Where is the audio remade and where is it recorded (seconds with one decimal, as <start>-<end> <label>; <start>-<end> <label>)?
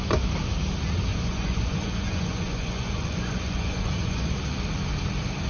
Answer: 0.0-1.1 recorded; 1.1-4.4 remade; 4.4-5.5 recorded